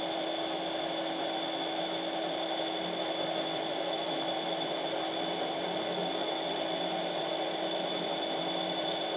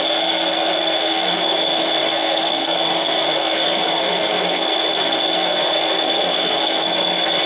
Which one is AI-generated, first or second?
second